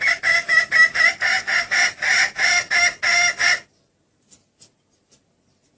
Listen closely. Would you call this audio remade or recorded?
recorded